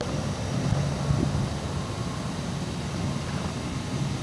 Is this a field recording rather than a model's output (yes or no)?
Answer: yes